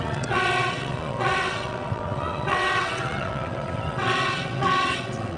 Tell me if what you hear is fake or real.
fake